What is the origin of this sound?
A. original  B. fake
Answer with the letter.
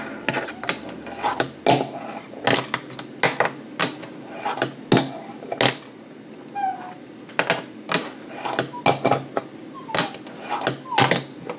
A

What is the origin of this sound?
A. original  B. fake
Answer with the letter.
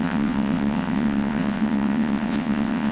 B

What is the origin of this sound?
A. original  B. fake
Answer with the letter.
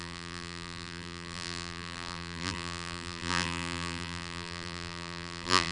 B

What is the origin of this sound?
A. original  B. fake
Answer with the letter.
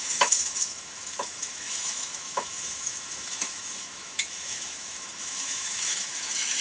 B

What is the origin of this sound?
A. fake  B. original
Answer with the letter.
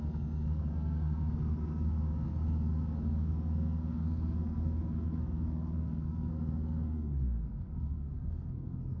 A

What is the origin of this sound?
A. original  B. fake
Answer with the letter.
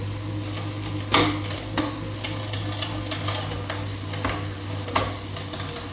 A